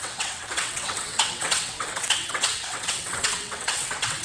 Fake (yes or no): yes